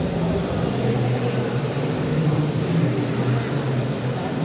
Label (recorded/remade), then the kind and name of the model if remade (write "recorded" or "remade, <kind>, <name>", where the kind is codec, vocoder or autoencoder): recorded